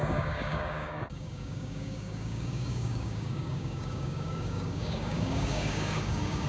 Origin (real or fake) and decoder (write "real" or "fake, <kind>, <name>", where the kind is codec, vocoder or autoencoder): fake, codec, DAC